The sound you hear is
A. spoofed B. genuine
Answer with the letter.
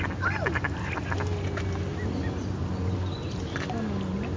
B